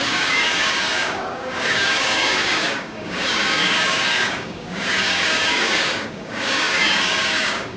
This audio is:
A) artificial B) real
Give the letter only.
A